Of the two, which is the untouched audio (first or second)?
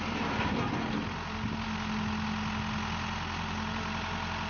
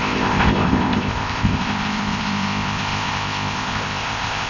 first